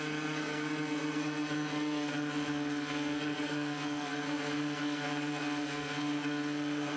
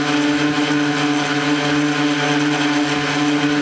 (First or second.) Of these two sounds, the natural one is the second